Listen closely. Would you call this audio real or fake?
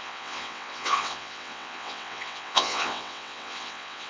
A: fake